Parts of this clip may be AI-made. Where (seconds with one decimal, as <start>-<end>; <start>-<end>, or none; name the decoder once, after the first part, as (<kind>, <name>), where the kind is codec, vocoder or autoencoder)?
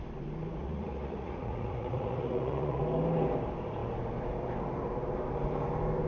0.6-2.8 (vocoder, Vocos)